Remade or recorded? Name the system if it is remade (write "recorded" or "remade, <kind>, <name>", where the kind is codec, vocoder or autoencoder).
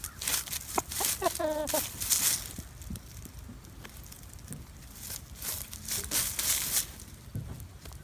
recorded